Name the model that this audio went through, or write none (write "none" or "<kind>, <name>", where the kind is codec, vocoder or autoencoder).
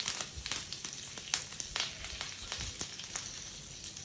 none